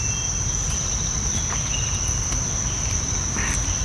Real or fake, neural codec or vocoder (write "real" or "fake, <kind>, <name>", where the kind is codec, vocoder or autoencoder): real